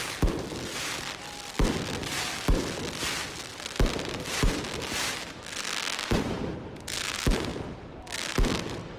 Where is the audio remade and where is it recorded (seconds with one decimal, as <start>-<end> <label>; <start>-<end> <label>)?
0.0-9.0 recorded